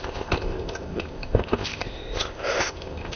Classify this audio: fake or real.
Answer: fake